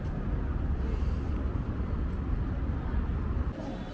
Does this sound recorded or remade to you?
recorded